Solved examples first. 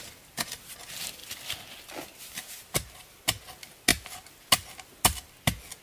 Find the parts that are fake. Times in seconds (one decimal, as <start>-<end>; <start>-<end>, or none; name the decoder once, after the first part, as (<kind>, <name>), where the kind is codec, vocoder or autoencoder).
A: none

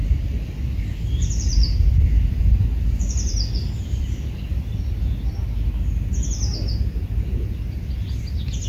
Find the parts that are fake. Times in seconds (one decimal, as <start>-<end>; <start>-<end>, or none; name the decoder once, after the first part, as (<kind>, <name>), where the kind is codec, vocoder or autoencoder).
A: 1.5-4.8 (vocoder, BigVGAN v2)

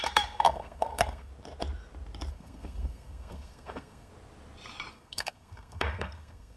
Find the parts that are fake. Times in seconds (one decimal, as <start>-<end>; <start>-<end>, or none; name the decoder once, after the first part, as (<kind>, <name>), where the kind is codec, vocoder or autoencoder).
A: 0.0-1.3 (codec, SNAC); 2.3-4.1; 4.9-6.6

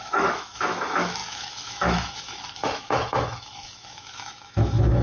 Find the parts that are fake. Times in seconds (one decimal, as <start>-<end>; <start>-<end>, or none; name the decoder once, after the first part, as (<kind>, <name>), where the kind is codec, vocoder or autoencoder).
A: 0.0-5.0 (autoencoder, DAC-VAE)

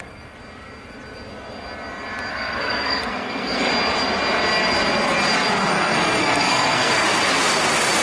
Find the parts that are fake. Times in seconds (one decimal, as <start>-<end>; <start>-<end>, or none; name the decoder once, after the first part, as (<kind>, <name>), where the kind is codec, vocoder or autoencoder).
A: 2.3-3.7 (codec, SNAC); 5.7-6.9

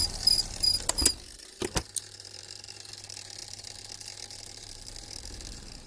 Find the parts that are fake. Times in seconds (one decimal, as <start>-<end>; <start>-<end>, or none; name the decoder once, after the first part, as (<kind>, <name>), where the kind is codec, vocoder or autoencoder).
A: none

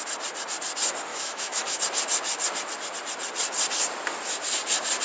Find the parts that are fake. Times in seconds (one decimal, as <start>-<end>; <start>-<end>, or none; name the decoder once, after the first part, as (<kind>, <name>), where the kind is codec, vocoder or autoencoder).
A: 1.1-1.8 (autoencoder, DAC-VAE)

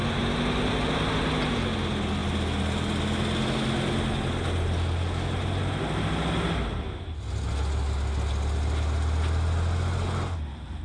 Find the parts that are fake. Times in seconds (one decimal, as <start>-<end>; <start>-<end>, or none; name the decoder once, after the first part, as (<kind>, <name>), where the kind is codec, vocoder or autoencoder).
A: none